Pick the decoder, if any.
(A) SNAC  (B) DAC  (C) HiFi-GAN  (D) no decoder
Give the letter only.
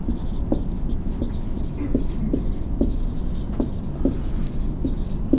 D